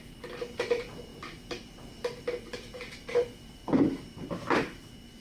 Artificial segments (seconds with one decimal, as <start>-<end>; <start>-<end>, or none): 0.0-5.2